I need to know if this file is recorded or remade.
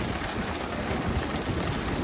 recorded